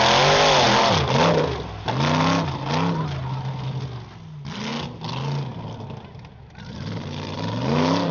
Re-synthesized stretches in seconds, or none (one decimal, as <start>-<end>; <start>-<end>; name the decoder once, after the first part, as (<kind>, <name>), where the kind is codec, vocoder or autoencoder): none